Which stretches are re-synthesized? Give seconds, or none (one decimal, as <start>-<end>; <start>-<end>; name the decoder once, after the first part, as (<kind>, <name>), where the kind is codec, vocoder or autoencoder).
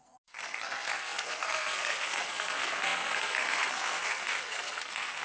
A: 0.0-5.2 (codec, SNAC)